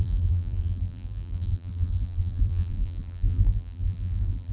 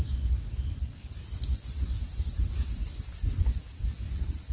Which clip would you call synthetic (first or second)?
first